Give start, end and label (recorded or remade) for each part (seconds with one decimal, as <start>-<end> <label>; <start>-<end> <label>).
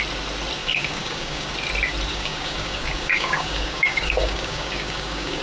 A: 0.0-0.6 recorded; 0.6-1.5 remade; 1.5-2.1 recorded; 2.1-5.4 remade